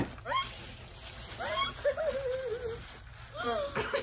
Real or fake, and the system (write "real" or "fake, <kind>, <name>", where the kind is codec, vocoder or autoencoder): real